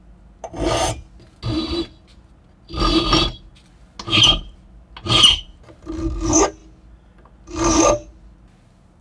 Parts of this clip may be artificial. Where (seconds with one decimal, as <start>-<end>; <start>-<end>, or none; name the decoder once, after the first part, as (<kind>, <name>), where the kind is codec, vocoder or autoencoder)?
none